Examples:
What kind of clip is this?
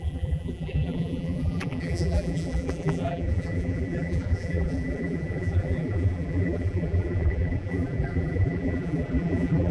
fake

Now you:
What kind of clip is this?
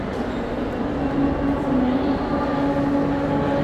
real